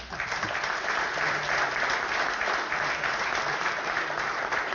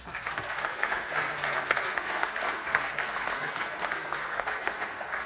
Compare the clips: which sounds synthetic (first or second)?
second